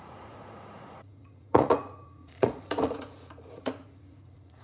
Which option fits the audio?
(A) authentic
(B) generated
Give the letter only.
B